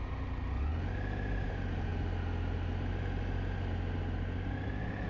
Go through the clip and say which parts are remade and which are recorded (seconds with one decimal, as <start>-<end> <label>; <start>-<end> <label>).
0.0-5.1 recorded